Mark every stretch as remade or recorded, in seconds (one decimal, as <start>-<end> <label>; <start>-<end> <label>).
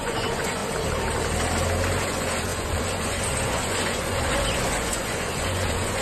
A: 0.0-0.6 remade; 0.6-2.0 recorded; 2.0-6.0 remade